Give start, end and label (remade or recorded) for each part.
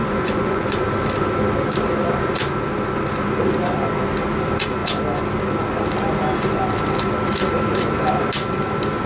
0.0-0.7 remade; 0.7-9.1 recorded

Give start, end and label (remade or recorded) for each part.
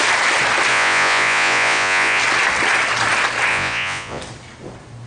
0.0-0.7 recorded; 0.7-2.2 remade; 2.2-3.5 recorded; 3.5-4.2 remade; 4.2-5.1 recorded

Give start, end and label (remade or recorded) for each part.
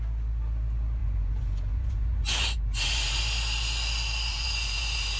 0.0-1.0 recorded; 1.0-3.2 remade; 3.2-4.3 recorded; 4.3-5.2 remade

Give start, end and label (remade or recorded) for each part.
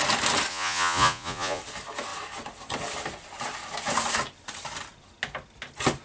0.0-0.5 recorded; 0.5-1.6 remade; 1.6-6.0 recorded